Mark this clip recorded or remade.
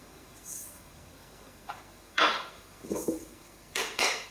remade